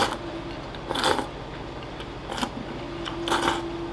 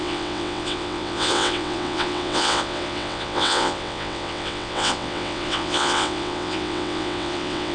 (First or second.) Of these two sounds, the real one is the first